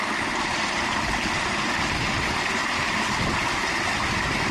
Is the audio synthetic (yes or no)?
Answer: no